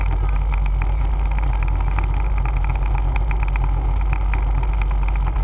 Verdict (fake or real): real